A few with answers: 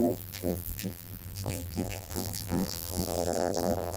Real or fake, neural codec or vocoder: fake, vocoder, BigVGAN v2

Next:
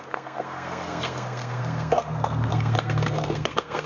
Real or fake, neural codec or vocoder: fake, codec, SNAC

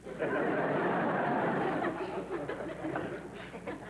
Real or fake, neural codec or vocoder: fake, vocoder, BigVGAN v2